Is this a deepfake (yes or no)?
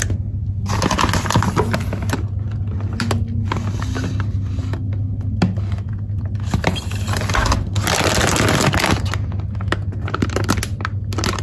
no